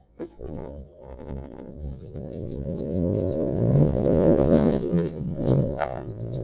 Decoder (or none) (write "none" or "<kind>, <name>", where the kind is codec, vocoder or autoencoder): vocoder, Vocos